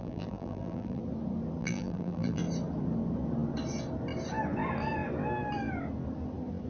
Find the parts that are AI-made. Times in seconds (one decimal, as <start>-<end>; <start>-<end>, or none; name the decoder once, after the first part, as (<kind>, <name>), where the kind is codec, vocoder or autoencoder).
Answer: 0.0-1.0 (vocoder, BigVGAN v2); 1.6-2.4